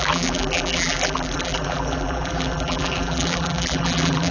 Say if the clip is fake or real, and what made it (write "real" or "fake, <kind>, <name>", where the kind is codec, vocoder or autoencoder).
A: fake, vocoder, BigVGAN v2